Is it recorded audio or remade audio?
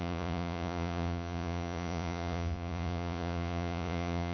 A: remade